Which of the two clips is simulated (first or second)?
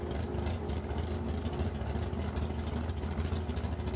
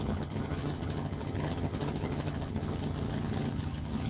second